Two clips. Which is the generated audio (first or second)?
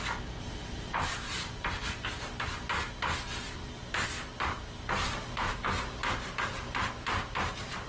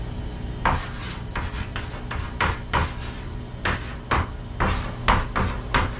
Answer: first